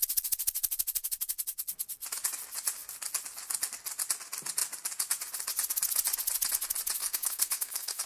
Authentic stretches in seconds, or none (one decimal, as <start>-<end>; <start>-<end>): 0.0-7.0